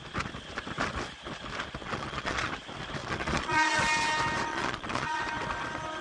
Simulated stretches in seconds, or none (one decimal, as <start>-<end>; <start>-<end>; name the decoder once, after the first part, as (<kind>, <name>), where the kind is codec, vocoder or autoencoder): 1.8-2.5 (vocoder, Vocos); 3.0-3.8; 4.5-5.2